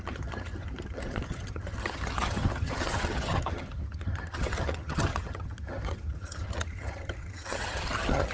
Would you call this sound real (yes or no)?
no